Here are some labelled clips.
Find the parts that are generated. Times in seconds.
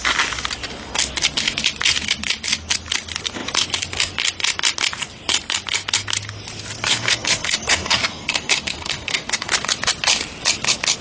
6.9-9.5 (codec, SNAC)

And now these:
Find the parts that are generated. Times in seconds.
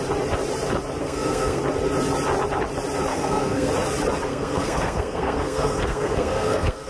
1.0-1.6 (codec, SNAC); 3.1-3.7; 4.3-6.9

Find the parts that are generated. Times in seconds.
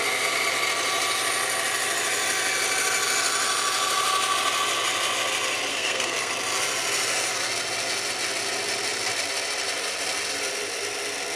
5.7-6.3 (codec, SNAC)